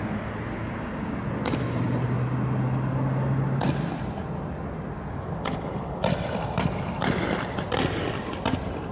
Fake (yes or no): no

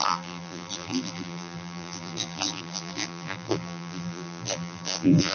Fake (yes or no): yes